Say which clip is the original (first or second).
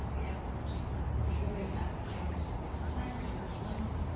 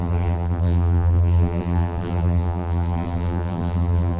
first